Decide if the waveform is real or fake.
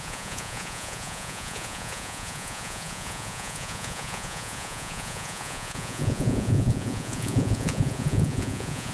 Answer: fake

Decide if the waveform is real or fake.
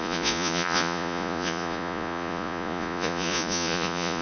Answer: fake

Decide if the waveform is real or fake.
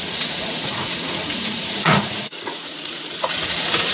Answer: fake